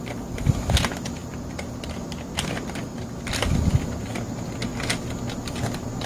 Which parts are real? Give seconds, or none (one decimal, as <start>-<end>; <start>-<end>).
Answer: 0.0-6.1